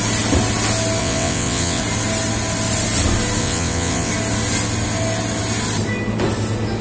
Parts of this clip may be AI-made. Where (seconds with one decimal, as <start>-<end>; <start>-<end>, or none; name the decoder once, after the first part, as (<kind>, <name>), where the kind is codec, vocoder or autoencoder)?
1.0-1.8 (vocoder, WaveNeXt); 3.4-4.1